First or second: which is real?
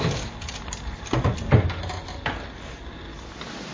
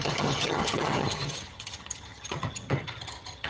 first